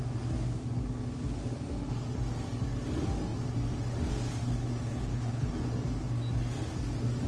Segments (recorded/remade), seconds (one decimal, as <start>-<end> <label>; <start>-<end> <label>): 0.0-4.9 recorded; 4.9-5.5 remade; 5.5-7.3 recorded